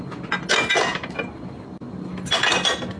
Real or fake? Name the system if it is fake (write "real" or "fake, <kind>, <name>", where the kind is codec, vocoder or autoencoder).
real